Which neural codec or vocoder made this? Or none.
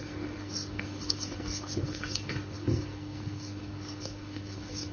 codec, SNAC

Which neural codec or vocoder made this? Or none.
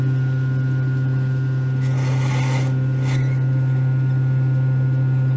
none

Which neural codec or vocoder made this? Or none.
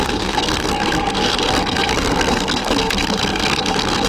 codec, SNAC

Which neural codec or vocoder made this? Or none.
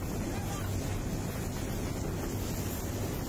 none